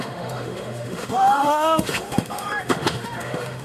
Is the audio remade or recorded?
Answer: remade